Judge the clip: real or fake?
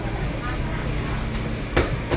real